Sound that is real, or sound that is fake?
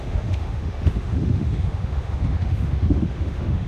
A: fake